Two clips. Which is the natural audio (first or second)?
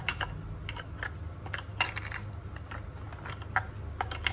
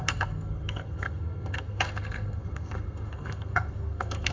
first